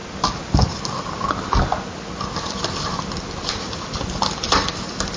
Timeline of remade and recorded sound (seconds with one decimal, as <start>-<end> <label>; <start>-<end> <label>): 0.0-5.2 recorded